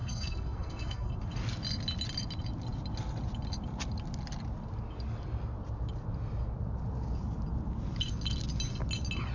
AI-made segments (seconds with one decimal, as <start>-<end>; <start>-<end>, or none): 0.0-1.1